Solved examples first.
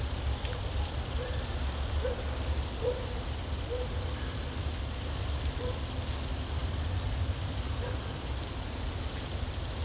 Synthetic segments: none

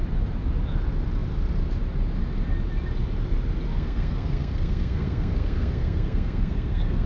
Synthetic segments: 3.7-7.1 (codec, SNAC)

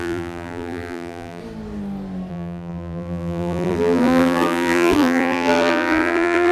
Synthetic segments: 0.0-1.4 (vocoder, BigVGAN v2); 2.3-6.5